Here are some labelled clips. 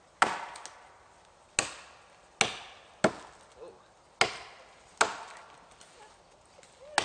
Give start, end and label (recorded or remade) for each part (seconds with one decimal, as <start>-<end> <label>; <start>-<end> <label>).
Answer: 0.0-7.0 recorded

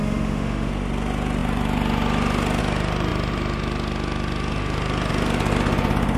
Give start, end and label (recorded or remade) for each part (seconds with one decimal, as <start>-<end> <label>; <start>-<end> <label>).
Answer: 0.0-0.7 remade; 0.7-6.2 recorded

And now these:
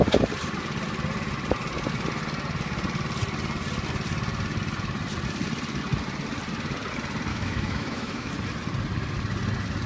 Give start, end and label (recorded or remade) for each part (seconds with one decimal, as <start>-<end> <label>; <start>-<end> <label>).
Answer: 0.0-7.3 recorded; 7.3-8.3 remade; 8.3-9.9 recorded

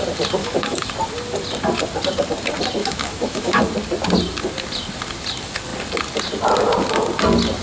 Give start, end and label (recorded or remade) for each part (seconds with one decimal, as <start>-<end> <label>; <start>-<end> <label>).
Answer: 0.0-0.4 recorded; 0.4-0.9 remade; 0.9-2.8 recorded; 2.8-3.6 remade; 3.6-7.6 recorded

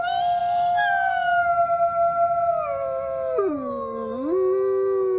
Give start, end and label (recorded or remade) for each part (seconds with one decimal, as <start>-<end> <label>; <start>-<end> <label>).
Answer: 0.0-5.2 recorded